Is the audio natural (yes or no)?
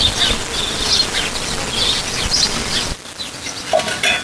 yes